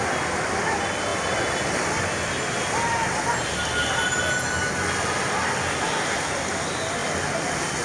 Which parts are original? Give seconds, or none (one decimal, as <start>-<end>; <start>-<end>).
0.0-7.8